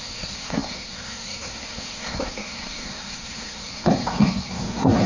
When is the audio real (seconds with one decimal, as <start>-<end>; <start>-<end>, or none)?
none